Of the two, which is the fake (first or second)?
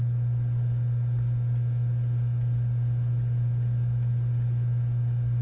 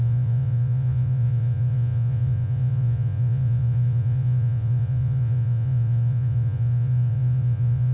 second